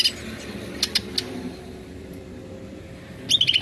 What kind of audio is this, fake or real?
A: real